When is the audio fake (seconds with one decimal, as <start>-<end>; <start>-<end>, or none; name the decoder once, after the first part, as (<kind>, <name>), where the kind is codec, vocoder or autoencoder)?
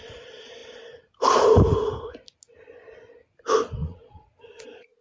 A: 3.8-4.3 (vocoder, Vocos)